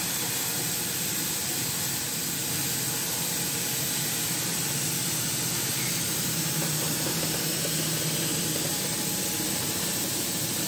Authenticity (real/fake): fake